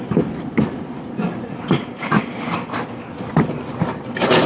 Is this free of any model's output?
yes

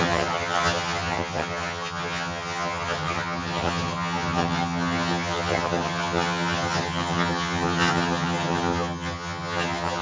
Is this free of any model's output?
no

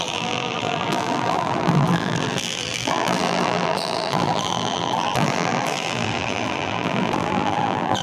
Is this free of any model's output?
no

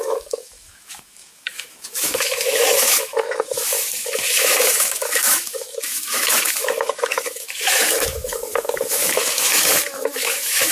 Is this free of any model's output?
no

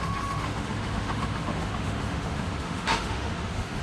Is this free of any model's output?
no